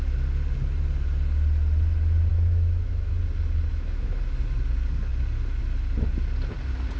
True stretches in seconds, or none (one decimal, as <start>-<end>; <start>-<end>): 0.0-2.3; 3.1-3.7; 4.2-7.0